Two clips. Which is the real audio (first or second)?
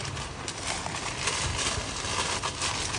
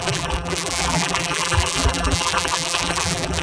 first